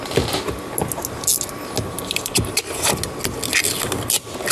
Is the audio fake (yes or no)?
no